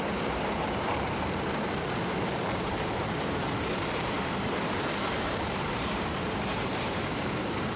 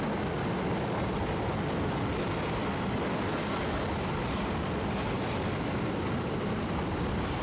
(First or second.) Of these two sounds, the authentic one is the second